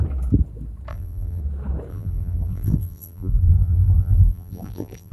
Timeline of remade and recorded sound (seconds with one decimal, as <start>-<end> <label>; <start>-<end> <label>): 0.0-0.9 recorded; 0.9-1.4 remade; 1.4-1.9 recorded; 1.9-5.1 remade